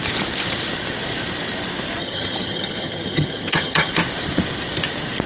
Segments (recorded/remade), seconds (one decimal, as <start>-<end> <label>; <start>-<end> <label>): 0.0-2.0 recorded; 2.0-3.9 remade; 3.9-5.3 recorded